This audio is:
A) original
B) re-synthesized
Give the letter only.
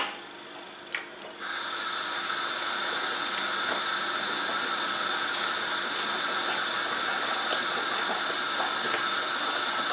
A